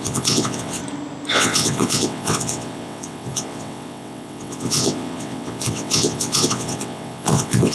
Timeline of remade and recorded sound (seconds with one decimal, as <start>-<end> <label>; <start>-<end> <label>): 0.0-0.8 remade; 0.8-1.3 recorded; 1.3-7.7 remade